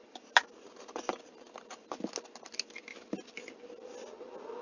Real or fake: real